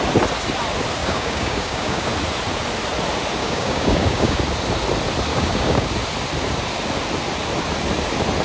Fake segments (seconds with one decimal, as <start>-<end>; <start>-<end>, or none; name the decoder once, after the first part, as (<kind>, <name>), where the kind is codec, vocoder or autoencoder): 1.0-2.1 (codec, DAC); 3.4-4.4; 5.3-5.9